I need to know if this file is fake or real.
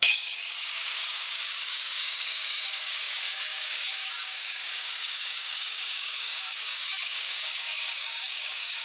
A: fake